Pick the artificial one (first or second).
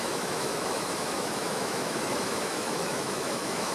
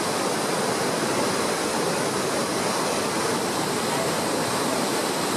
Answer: first